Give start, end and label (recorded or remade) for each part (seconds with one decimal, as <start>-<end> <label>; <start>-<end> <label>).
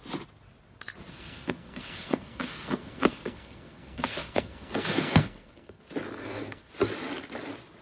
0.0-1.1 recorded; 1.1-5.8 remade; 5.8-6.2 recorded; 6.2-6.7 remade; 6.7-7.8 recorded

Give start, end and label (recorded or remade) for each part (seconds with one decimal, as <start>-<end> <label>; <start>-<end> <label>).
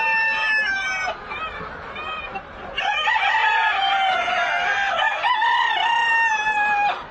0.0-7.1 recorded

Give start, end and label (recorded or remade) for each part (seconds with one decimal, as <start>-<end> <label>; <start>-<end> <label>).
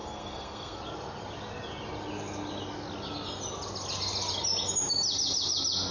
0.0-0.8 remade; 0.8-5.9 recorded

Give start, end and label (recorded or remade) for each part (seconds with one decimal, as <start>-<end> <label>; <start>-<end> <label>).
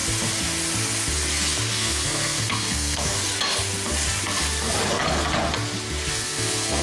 0.0-1.7 recorded; 1.7-3.1 remade; 3.1-6.1 recorded; 6.1-6.8 remade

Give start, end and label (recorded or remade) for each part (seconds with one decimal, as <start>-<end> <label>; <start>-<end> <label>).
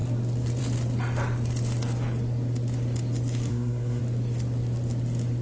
0.0-3.5 recorded; 3.5-4.0 remade; 4.0-5.4 recorded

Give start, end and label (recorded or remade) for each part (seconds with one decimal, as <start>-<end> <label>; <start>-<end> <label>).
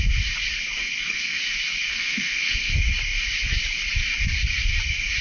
0.0-0.8 recorded; 0.8-1.4 remade; 1.4-1.9 recorded; 1.9-2.7 remade; 2.7-5.2 recorded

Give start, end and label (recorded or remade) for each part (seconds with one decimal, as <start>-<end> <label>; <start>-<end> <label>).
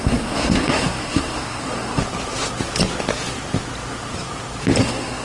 0.0-2.0 remade; 2.0-4.8 recorded; 4.8-5.2 remade